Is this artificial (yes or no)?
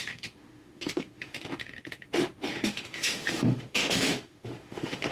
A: yes